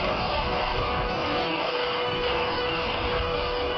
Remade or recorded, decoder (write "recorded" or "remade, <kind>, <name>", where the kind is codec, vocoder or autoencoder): remade, codec, DAC